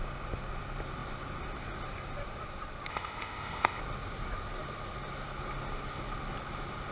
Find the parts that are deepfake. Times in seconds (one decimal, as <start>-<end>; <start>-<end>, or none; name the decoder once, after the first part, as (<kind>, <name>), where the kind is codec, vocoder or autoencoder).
2.9-3.8 (codec, ZipCodec)